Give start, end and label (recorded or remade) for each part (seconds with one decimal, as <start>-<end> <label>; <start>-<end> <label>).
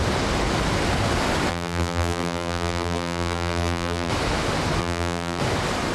0.0-1.5 recorded; 1.5-4.1 remade; 4.1-4.8 recorded; 4.8-5.4 remade; 5.4-5.9 recorded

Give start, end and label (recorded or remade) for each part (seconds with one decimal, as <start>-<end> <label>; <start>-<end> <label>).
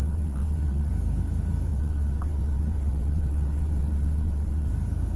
0.0-0.9 remade; 0.9-1.7 recorded; 1.7-4.7 remade; 4.7-5.2 recorded